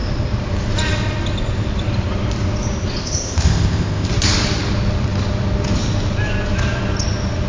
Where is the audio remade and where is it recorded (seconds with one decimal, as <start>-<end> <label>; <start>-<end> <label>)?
0.0-3.0 recorded; 3.0-4.1 remade; 4.1-7.5 recorded